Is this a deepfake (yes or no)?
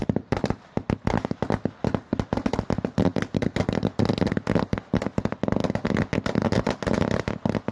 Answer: no